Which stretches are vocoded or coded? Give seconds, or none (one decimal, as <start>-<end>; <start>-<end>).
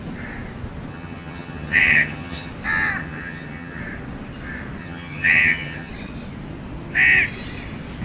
0.9-2.5; 3.0-3.8; 4.8-5.9